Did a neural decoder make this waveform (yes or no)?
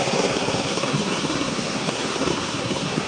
yes